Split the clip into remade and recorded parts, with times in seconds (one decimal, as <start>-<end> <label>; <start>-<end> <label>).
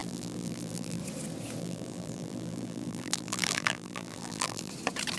0.0-1.0 remade; 1.0-1.6 recorded; 1.6-4.7 remade; 4.7-5.2 recorded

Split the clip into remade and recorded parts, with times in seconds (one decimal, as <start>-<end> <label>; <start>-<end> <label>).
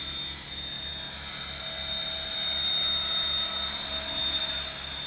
0.0-5.1 recorded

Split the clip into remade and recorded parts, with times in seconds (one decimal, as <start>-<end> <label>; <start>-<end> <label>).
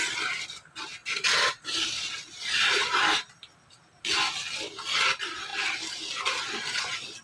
0.0-1.0 recorded; 1.0-3.9 remade; 3.9-7.2 recorded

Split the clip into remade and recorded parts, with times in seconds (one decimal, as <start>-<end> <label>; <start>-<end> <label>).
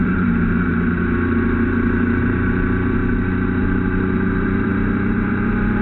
0.0-0.7 remade; 0.7-2.2 recorded; 2.2-3.0 remade; 3.0-3.6 recorded; 3.6-4.7 remade; 4.7-5.8 recorded